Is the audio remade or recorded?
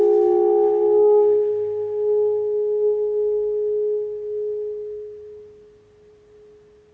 recorded